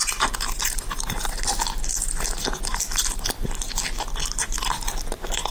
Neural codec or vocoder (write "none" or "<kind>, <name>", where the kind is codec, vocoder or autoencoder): none